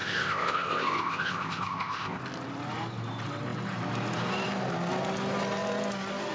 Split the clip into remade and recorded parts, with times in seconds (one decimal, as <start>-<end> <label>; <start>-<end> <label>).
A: 0.0-2.2 remade; 2.2-6.3 recorded